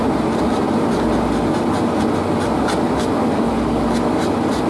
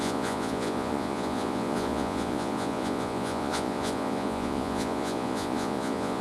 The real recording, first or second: first